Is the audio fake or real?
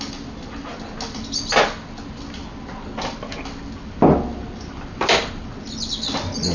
real